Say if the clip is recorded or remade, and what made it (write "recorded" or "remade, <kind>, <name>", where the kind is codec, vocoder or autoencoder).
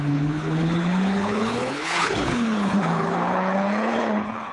remade, codec, HILCodec